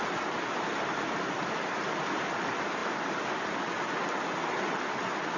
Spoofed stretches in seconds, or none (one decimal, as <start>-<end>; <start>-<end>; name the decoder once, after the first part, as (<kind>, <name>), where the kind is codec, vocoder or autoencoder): none